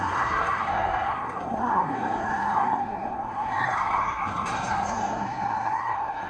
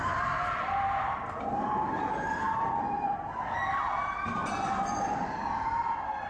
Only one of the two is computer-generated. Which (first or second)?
first